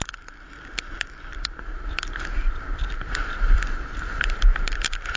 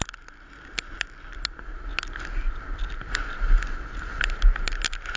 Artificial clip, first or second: first